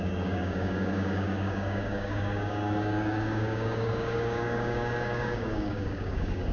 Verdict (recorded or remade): remade